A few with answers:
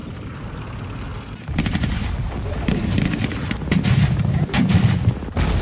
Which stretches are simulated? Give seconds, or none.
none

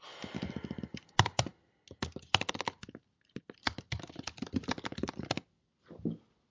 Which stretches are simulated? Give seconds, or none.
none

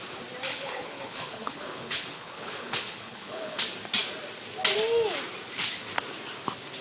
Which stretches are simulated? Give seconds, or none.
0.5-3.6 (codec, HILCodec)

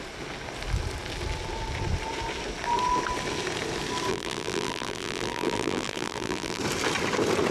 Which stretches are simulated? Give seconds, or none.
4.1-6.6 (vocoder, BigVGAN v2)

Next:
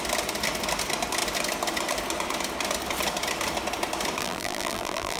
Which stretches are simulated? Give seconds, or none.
4.2-5.2 (vocoder, BigVGAN v2)

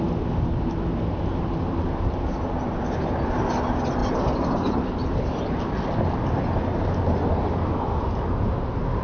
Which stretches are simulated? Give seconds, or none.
none

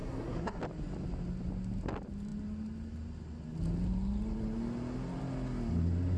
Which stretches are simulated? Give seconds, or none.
0.0-0.6 (codec, SNAC)

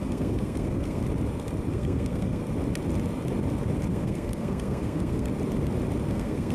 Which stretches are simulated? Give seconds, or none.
0.0-1.0 (codec, SNAC); 1.7-2.4; 3.9-5.3; 6.1-6.5